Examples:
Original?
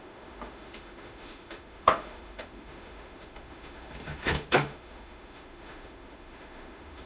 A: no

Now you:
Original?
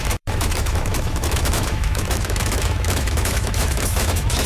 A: no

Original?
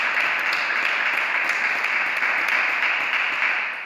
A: yes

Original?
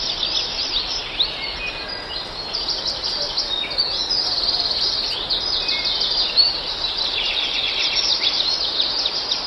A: yes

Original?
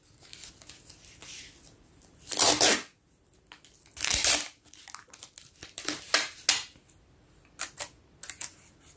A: yes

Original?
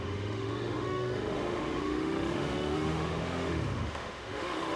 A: no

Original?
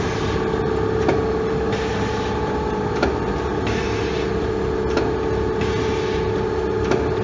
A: yes